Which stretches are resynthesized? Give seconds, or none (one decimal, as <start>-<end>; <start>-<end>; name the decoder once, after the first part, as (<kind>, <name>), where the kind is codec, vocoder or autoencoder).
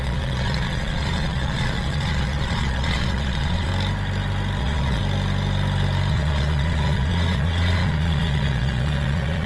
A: 0.0-3.7 (vocoder, Vocos); 4.6-5.0; 6.1-9.5